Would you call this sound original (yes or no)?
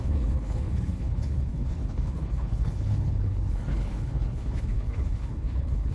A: no